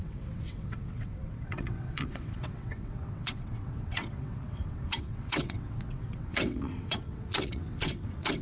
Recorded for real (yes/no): no